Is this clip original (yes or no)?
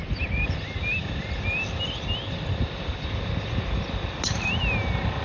yes